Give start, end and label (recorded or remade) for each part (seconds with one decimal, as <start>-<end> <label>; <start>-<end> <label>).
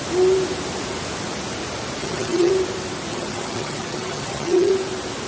0.0-2.0 recorded; 2.0-2.5 remade; 2.5-3.1 recorded; 3.1-4.7 remade; 4.7-5.3 recorded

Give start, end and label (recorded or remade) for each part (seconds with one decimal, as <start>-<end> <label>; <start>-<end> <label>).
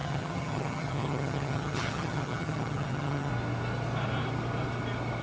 0.0-3.3 remade; 3.3-5.2 recorded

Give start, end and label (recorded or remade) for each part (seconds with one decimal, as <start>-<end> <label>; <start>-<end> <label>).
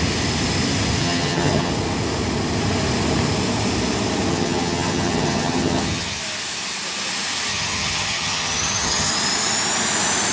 0.0-1.0 recorded; 1.0-1.7 remade; 1.7-4.3 recorded; 4.3-6.2 remade; 6.2-7.5 recorded; 7.5-9.1 remade; 9.1-10.3 recorded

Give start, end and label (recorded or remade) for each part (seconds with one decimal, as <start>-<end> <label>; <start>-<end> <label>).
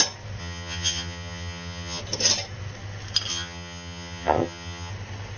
0.0-0.4 recorded; 0.4-2.0 remade; 2.0-3.3 recorded; 3.3-4.9 remade; 4.9-5.4 recorded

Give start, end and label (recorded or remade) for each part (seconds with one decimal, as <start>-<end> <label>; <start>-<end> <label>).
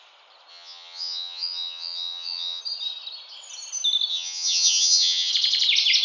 0.0-0.5 recorded; 0.5-2.6 remade; 2.6-4.1 recorded; 4.1-5.3 remade; 5.3-6.0 recorded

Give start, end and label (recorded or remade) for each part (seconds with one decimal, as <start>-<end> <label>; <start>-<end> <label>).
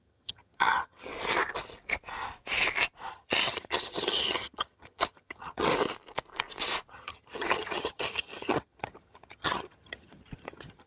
0.0-1.1 remade; 1.1-3.1 recorded; 3.1-5.7 remade; 5.7-6.9 recorded; 6.9-10.9 remade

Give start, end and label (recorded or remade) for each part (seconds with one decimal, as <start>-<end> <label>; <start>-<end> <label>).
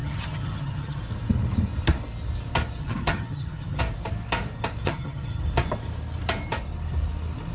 0.0-1.0 remade; 1.0-2.8 recorded; 2.8-3.8 remade; 3.8-4.8 recorded; 4.8-5.4 remade; 5.4-7.5 recorded